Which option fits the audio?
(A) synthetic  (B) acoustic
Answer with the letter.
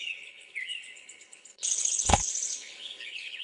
A